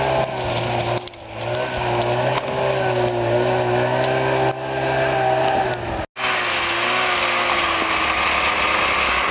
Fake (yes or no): no